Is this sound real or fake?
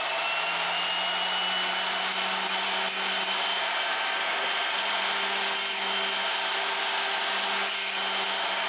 real